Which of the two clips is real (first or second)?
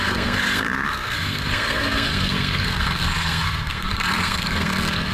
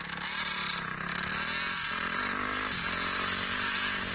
second